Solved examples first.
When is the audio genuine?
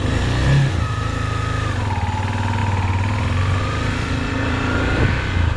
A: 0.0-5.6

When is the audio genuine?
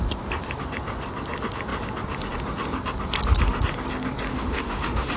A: 0.0-4.3